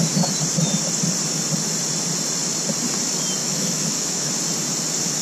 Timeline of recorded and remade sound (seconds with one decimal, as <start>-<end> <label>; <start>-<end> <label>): 0.0-3.4 recorded; 3.4-4.3 remade; 4.3-5.2 recorded